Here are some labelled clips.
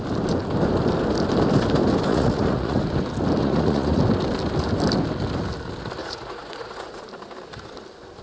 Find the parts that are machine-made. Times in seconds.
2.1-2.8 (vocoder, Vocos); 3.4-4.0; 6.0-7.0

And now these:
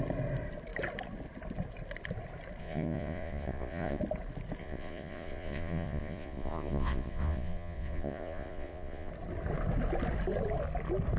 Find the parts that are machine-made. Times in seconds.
2.6-4.0 (vocoder, Vocos); 4.6-9.1

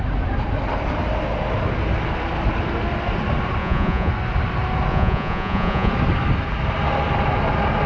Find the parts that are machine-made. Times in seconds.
3.6-4.1 (vocoder, Vocos); 4.9-5.9